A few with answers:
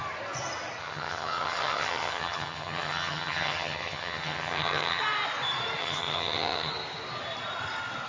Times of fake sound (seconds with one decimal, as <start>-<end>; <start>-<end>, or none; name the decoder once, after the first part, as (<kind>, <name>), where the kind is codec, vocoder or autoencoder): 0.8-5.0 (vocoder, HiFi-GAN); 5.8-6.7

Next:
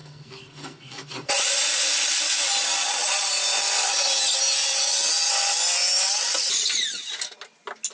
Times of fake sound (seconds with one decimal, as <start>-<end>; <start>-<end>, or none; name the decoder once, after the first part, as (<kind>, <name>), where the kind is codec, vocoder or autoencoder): 0.0-1.3 (codec, SNAC)

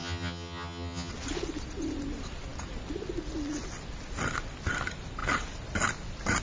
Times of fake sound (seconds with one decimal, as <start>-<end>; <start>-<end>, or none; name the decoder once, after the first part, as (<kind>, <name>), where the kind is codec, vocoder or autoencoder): 0.0-1.1 (vocoder, HiFi-GAN)

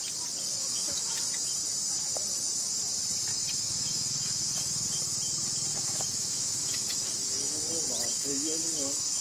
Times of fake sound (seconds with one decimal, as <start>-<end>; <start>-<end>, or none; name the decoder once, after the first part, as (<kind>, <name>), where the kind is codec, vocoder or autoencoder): 0.5-1.1 (autoencoder, DAC-VAE); 3.3-5.0; 5.7-7.7; 8.1-9.2